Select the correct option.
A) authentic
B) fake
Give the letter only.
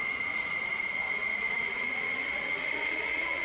B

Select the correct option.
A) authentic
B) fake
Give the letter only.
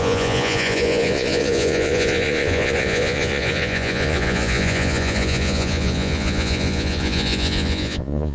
B